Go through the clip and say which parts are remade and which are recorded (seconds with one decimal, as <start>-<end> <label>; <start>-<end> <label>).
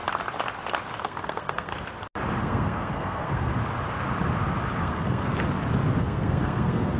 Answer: 0.0-1.0 recorded; 1.0-1.7 remade; 1.7-2.4 recorded; 2.4-3.5 remade; 3.5-4.8 recorded; 4.8-5.3 remade; 5.3-6.0 recorded; 6.0-7.0 remade